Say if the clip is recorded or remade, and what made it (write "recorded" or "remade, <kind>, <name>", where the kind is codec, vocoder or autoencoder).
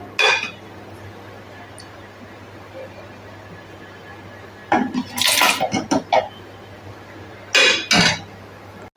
recorded